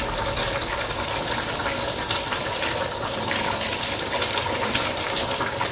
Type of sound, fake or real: real